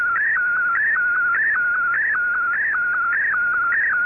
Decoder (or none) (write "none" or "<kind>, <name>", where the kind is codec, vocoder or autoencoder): none